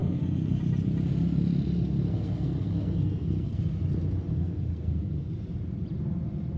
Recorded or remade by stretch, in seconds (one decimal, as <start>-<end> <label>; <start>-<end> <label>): 0.0-0.6 remade; 0.6-2.1 recorded; 2.1-3.6 remade; 3.6-4.3 recorded; 4.3-5.3 remade; 5.3-6.6 recorded